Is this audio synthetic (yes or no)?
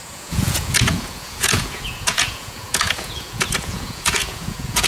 yes